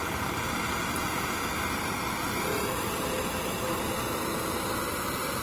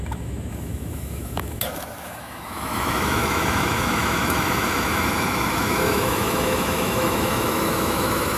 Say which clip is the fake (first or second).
second